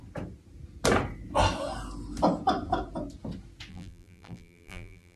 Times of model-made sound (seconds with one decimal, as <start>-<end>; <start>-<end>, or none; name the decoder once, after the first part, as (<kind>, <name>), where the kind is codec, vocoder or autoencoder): 3.7-5.2 (vocoder, BigVGAN v2)